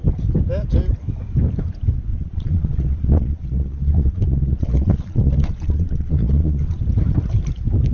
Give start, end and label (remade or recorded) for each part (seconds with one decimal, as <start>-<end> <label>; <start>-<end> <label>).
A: 0.0-2.1 recorded; 2.1-6.8 remade; 6.8-7.9 recorded